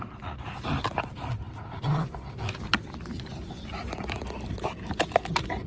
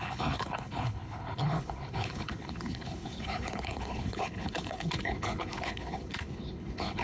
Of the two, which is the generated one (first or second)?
second